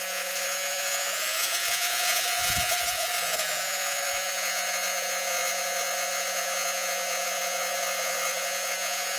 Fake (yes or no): yes